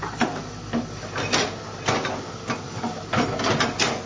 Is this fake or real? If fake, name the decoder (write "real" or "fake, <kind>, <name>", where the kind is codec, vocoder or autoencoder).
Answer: real